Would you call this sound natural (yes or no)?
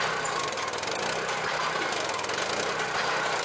yes